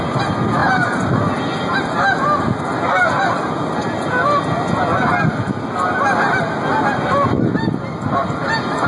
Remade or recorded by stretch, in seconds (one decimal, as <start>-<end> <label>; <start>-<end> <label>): 0.0-8.9 recorded